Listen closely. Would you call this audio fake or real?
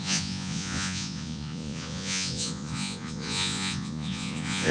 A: fake